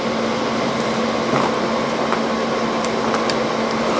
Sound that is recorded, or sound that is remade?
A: recorded